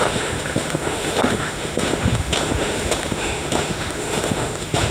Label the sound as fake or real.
fake